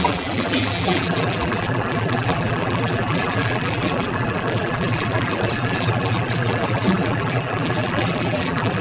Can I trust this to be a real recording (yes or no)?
no